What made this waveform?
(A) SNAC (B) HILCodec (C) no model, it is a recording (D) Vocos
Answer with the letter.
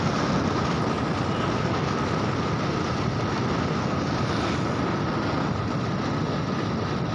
C